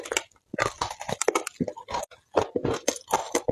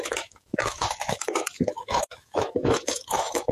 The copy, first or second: second